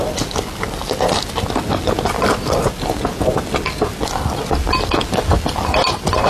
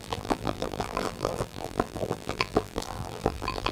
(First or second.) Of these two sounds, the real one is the first